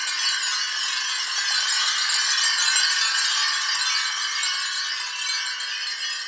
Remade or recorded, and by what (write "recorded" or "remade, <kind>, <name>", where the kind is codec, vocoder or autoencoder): recorded